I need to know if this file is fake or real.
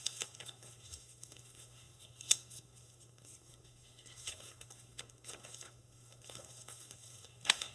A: fake